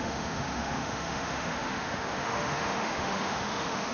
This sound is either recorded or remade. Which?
remade